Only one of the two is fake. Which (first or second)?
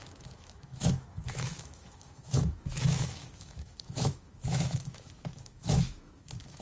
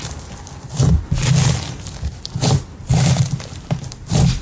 first